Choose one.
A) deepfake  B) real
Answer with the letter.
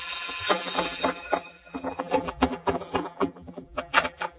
A